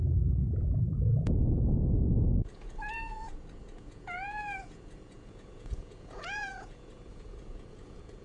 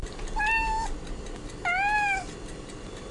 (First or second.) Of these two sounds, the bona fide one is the second